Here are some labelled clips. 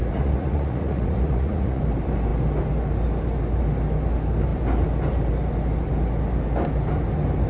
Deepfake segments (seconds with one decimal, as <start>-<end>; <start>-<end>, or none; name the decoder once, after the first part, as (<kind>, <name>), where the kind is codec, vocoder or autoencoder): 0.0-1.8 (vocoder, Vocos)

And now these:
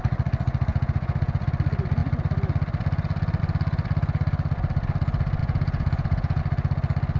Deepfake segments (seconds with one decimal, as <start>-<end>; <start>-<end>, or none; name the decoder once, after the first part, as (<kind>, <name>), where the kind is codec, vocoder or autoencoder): 0.7-1.5 (vocoder, Vocos); 5.4-6.4

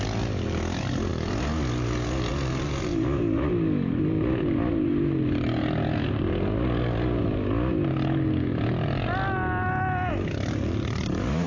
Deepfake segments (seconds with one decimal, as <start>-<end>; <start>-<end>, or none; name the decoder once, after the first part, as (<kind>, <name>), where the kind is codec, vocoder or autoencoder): none

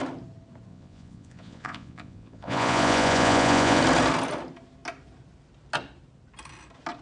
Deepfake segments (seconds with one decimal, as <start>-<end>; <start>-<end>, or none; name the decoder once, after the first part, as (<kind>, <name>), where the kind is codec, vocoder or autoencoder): 0.7-3.8 (vocoder, Vocos)

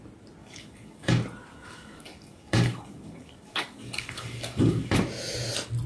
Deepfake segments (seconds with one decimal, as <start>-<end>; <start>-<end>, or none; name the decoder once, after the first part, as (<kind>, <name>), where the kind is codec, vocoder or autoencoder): 0.4-1.1 (codec, DAC); 1.5-5.0